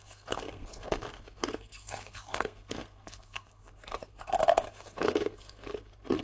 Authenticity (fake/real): fake